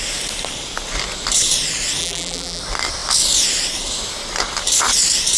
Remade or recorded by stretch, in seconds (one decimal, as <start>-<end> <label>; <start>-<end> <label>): 0.0-2.0 recorded; 2.0-2.6 remade; 2.6-5.4 recorded